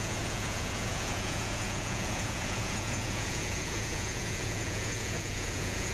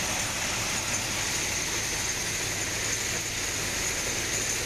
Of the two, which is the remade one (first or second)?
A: first